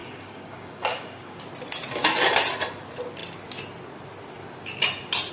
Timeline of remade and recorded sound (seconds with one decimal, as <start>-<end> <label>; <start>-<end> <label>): 0.0-1.4 remade; 1.4-5.3 recorded